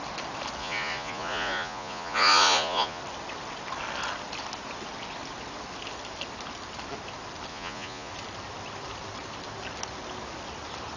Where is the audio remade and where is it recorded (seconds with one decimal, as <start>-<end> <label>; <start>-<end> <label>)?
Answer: 0.0-0.6 recorded; 0.6-3.0 remade; 3.0-7.5 recorded; 7.5-8.1 remade; 8.1-11.0 recorded